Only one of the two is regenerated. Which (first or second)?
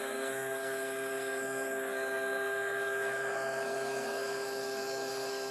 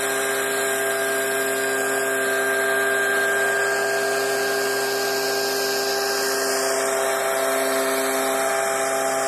first